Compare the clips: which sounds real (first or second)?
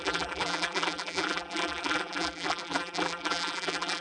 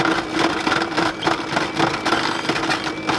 second